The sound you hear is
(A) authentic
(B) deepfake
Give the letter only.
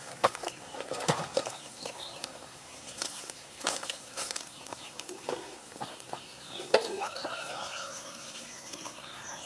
B